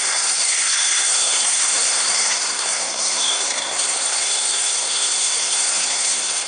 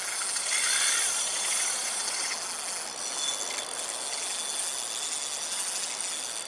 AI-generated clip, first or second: first